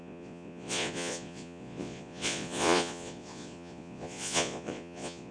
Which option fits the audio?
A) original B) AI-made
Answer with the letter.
B